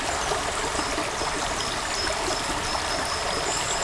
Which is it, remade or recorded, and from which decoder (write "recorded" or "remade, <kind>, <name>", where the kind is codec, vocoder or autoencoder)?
recorded